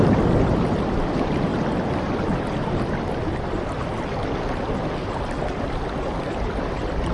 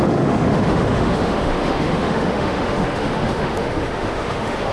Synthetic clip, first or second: second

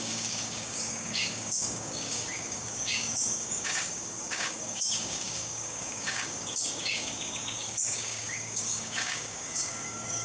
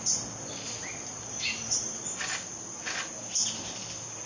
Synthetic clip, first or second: first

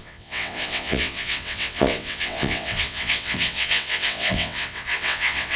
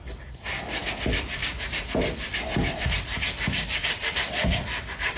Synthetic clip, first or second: first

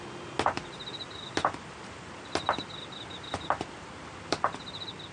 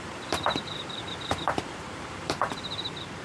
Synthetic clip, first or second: second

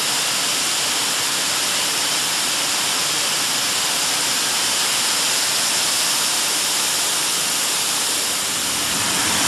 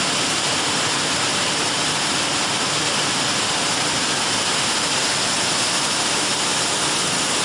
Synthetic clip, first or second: first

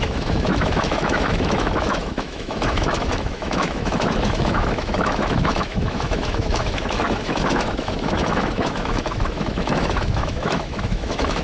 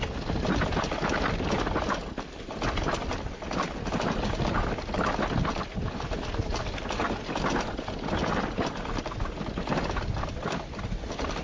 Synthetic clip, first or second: first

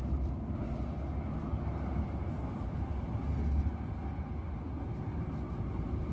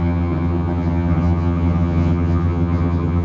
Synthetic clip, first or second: second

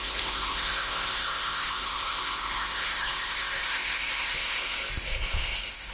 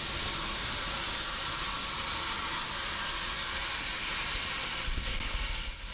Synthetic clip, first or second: first